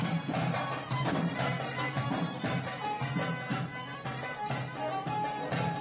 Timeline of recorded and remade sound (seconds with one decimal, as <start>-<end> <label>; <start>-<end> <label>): 0.0-3.2 remade; 3.2-4.9 recorded; 4.9-5.8 remade